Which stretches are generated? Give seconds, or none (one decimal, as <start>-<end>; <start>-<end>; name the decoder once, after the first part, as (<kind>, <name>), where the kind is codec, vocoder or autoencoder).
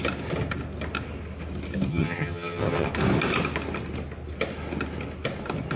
1.9-2.9 (vocoder, HiFi-GAN)